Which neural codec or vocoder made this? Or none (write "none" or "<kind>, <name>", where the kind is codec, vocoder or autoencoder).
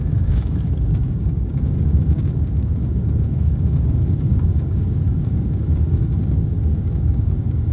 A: codec, DAC